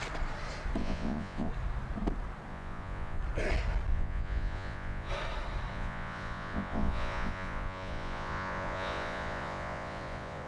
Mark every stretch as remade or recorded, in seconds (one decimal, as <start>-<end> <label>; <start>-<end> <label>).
0.0-0.8 recorded; 0.8-1.5 remade; 1.5-2.5 recorded; 2.5-3.2 remade; 3.2-3.9 recorded; 3.9-5.1 remade; 5.1-5.7 recorded; 5.7-10.5 remade